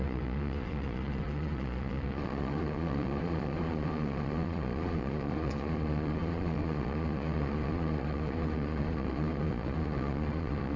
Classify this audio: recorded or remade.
remade